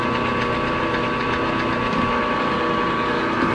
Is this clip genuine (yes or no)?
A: yes